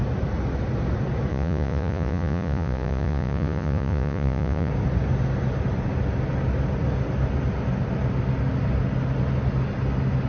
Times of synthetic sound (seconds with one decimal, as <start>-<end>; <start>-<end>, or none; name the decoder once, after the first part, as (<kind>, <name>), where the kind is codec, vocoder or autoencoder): 1.3-4.7 (vocoder, Vocos)